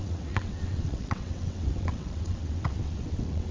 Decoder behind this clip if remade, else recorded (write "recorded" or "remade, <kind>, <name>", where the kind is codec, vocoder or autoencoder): remade, vocoder, WaveNeXt